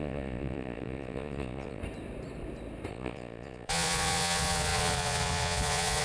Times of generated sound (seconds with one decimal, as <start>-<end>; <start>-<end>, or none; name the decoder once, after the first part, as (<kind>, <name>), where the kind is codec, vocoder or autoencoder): 0.0-1.8 (vocoder, Vocos); 2.9-6.0